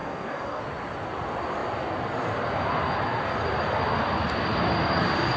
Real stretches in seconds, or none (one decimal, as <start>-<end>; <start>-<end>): 0.6-5.4